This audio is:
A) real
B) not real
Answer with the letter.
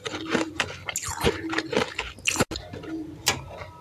A